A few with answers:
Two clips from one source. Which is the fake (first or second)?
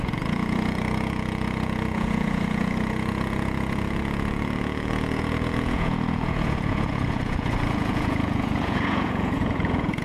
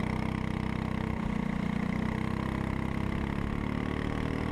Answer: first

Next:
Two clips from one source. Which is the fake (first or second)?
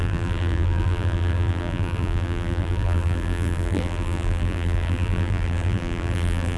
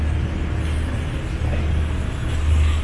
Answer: first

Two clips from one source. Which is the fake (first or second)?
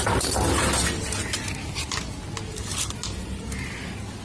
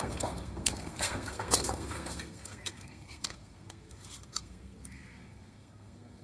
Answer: second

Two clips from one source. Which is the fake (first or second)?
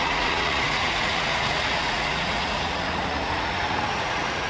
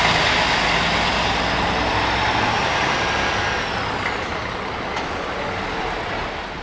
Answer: first